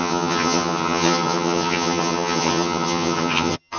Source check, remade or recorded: remade